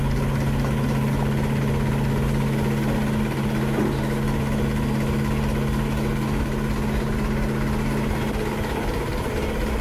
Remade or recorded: recorded